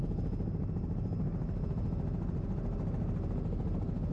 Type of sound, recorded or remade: recorded